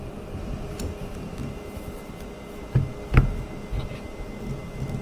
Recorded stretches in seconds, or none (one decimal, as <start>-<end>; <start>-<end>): 0.0-5.0